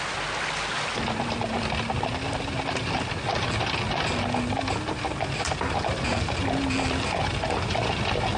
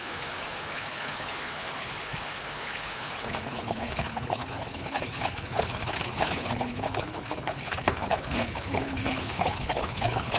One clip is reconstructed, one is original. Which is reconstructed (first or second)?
second